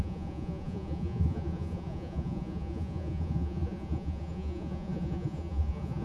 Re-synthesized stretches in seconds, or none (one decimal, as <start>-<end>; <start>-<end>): 0.0-6.0